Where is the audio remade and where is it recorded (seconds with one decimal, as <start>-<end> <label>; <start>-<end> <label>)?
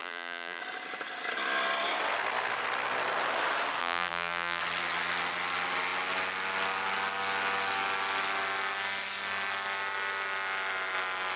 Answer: 0.0-0.6 remade; 0.6-3.8 recorded; 3.8-4.6 remade; 4.6-11.4 recorded